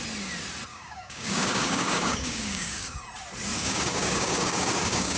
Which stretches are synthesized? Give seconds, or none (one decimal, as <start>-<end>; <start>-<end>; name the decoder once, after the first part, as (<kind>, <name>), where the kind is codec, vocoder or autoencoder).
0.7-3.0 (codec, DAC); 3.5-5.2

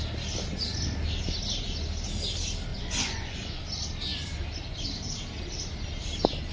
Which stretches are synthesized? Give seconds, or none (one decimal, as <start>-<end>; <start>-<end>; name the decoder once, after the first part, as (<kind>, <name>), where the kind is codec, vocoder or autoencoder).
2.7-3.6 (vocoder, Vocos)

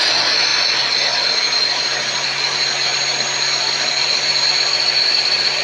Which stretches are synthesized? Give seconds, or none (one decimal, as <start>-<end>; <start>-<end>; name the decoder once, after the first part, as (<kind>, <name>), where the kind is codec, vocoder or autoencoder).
none